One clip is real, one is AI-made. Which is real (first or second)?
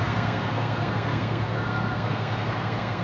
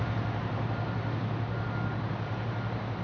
second